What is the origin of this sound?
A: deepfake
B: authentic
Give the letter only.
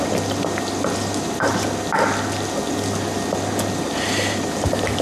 B